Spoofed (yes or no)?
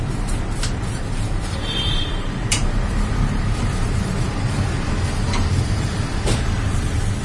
yes